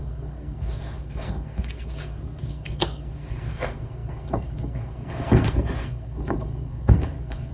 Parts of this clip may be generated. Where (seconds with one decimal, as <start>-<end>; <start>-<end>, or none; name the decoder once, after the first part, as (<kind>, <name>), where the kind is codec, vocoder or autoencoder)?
0.0-7.5 (codec, SNAC)